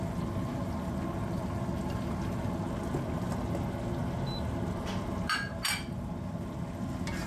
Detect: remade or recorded recorded